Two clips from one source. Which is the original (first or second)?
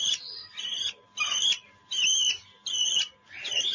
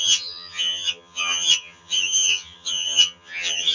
first